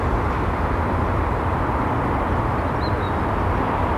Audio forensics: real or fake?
real